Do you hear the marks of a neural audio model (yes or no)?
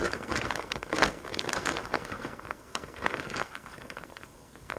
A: yes